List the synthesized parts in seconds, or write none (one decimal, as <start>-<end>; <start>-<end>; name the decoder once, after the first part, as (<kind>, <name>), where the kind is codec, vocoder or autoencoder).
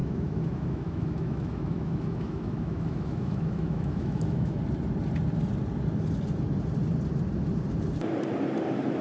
0.0-4.6 (autoencoder, DAC-VAE)